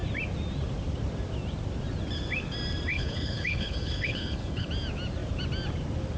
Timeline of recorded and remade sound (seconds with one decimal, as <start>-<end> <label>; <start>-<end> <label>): 0.0-2.9 recorded; 2.9-4.7 remade; 4.7-6.2 recorded